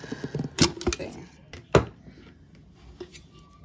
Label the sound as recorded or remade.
recorded